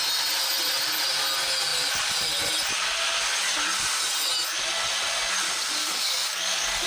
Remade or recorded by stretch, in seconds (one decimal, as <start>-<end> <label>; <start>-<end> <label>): 0.0-5.8 recorded; 5.8-6.9 remade

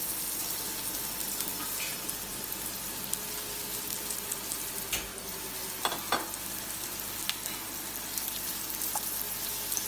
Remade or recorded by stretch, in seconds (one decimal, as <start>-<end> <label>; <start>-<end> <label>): 0.0-9.9 recorded

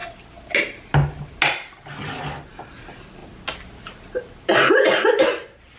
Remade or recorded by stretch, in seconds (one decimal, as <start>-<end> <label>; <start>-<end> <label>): 0.0-5.8 recorded

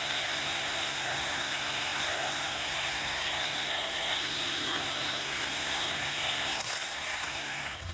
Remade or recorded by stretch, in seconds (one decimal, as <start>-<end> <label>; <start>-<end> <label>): 0.0-7.9 remade

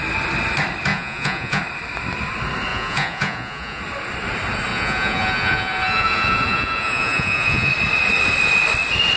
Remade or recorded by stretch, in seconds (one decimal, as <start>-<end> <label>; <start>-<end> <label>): 0.0-0.9 recorded; 0.9-1.6 remade; 1.6-2.7 recorded; 2.7-3.8 remade; 3.8-4.7 recorded; 4.7-7.7 remade; 7.7-9.2 recorded

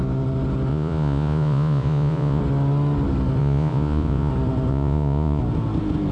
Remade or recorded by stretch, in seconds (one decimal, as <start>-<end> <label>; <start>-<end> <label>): 0.0-0.7 recorded; 0.7-2.4 remade; 2.4-3.4 recorded; 3.4-4.3 remade; 4.3-4.7 recorded; 4.7-5.4 remade; 5.4-6.1 recorded

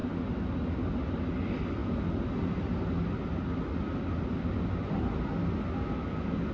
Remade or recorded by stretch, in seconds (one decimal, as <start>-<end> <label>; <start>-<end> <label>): 0.0-6.5 recorded

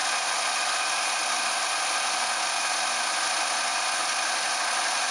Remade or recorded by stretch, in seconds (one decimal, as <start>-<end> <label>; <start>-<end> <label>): 0.0-5.1 recorded